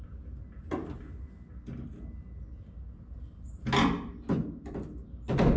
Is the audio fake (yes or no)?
no